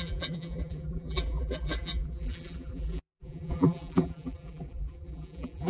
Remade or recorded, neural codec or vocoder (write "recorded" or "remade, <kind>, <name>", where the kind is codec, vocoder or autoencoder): remade, vocoder, BigVGAN v2